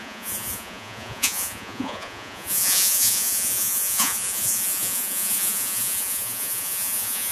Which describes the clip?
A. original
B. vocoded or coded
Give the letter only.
B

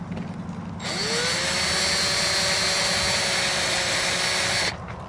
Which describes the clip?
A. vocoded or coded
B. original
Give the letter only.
B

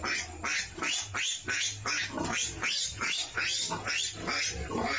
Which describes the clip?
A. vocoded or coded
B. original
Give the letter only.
B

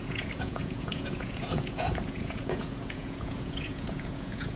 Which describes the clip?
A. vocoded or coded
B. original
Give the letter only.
A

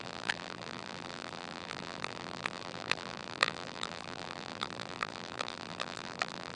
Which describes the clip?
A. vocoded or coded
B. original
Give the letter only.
A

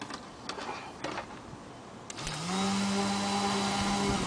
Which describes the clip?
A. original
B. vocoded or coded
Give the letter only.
A